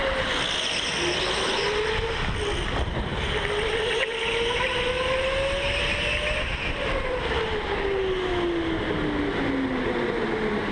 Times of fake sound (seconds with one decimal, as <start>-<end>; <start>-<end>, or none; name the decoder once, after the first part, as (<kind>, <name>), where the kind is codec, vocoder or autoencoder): none

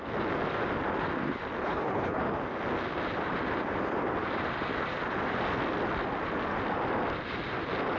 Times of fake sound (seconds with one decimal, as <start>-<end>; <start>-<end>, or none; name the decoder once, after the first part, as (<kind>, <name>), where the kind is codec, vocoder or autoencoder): 1.6-2.2 (codec, HILCodec)

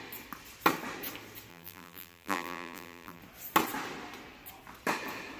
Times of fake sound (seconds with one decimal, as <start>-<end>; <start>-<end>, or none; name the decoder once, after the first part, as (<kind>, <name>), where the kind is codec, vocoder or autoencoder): 1.5-3.2 (vocoder, BigVGAN v2)

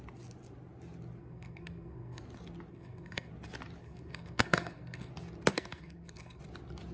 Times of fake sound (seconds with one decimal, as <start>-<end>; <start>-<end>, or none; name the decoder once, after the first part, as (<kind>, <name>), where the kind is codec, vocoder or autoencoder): 1.2-2.2 (codec, SNAC); 2.7-3.3; 3.8-5.1; 5.5-6.4